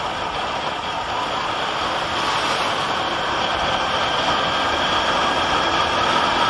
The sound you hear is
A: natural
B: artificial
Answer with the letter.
A